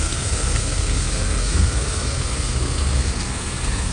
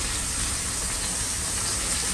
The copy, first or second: first